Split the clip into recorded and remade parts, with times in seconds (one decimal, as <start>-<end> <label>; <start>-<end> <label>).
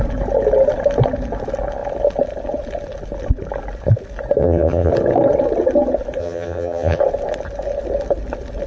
0.0-4.4 recorded; 4.4-4.9 remade; 4.9-6.2 recorded; 6.2-7.0 remade; 7.0-8.7 recorded